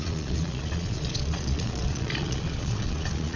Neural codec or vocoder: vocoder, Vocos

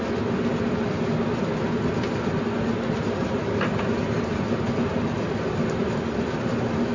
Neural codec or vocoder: none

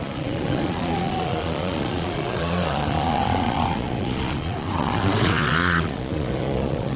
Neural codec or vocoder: vocoder, Vocos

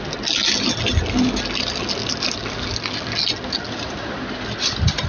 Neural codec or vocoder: none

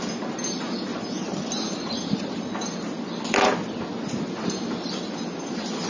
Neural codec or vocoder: none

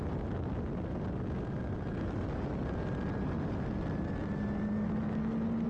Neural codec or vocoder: none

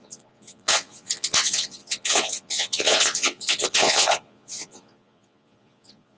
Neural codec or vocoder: vocoder, Vocos